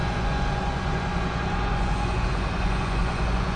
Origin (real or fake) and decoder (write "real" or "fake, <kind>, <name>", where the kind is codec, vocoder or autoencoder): fake, vocoder, Vocos